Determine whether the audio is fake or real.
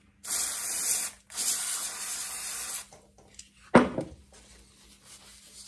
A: real